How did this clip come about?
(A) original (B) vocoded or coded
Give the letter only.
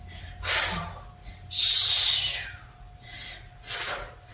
A